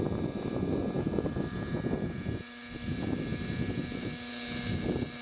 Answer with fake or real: real